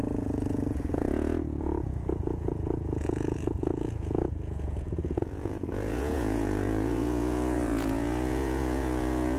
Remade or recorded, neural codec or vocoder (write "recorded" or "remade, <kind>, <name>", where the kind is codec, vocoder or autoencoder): remade, vocoder, Vocos